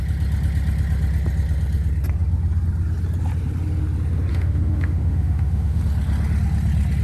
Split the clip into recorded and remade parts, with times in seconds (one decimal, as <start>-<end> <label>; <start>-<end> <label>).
0.0-4.3 recorded; 4.3-5.8 remade; 5.8-7.0 recorded